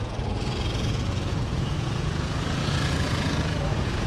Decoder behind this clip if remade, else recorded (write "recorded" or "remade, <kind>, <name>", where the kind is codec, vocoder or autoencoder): remade, vocoder, Vocos